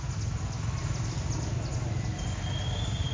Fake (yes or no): no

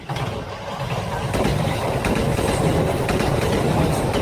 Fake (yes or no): no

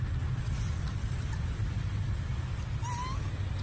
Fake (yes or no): no